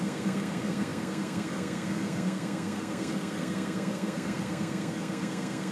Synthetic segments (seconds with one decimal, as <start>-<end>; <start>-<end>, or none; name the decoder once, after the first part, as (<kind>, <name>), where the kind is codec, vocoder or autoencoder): 0.0-5.7 (codec, SNAC)